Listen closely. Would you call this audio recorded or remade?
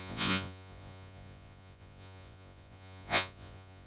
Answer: remade